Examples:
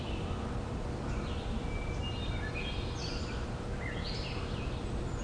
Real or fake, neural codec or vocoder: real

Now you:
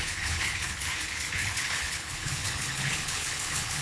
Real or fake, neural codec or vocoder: fake, codec, HILCodec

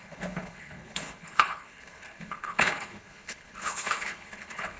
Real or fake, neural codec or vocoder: fake, codec, HILCodec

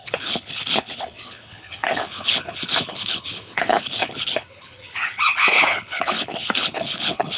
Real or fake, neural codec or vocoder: fake, codec, HILCodec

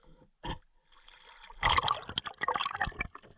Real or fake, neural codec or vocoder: real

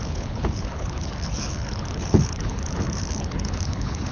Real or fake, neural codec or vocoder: fake, codec, HILCodec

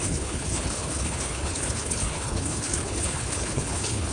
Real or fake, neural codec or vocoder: fake, codec, HILCodec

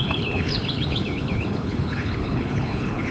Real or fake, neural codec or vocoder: fake, codec, HILCodec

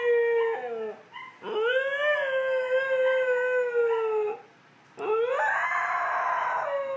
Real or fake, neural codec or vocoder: real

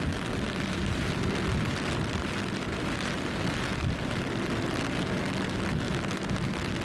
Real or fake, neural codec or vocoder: real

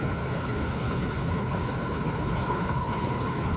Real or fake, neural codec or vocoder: fake, codec, HILCodec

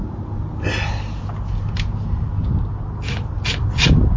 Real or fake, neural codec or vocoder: real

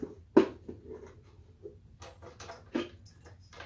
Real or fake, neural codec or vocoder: real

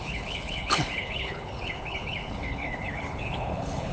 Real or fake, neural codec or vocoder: fake, codec, HILCodec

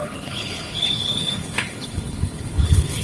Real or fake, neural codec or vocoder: fake, codec, HILCodec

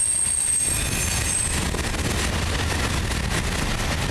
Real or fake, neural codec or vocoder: real